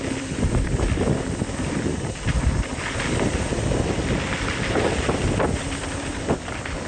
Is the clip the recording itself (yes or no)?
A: yes